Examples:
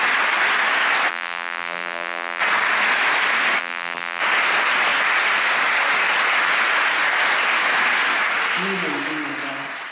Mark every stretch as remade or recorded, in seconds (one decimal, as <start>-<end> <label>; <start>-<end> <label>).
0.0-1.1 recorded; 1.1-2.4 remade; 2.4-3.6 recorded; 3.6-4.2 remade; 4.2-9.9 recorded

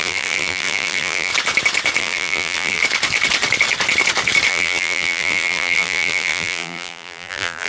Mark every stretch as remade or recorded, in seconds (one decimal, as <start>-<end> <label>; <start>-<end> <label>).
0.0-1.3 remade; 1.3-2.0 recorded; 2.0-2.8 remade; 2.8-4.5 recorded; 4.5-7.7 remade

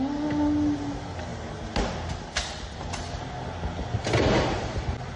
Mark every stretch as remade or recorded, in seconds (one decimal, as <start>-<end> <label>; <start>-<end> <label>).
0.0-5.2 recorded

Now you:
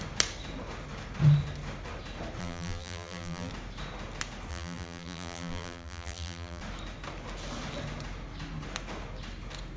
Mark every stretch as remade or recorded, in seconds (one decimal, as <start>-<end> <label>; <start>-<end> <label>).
0.0-2.4 recorded; 2.4-3.5 remade; 3.5-4.5 recorded; 4.5-6.6 remade; 6.6-9.8 recorded

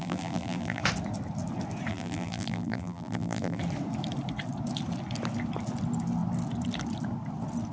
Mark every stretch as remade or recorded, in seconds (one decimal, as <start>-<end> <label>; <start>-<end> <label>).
0.0-0.8 remade; 0.8-1.9 recorded; 1.9-3.6 remade; 3.6-7.7 recorded

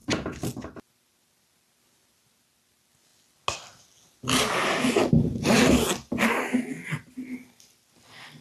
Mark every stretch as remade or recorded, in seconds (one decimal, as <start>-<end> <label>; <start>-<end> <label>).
0.0-8.4 recorded